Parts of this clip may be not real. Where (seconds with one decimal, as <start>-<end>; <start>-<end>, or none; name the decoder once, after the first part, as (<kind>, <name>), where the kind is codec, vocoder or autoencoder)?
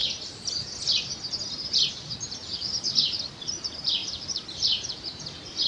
0.0-0.5 (vocoder, BigVGAN v2); 2.4-3.3; 4.0-5.2